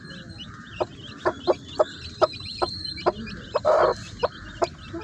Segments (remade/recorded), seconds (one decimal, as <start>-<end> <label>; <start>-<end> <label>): 0.0-5.0 remade